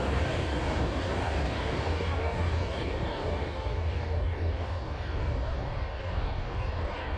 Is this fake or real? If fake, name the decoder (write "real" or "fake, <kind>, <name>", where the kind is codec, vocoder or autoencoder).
fake, codec, DAC